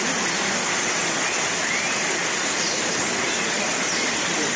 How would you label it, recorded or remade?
recorded